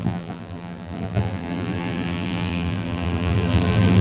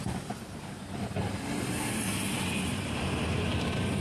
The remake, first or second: first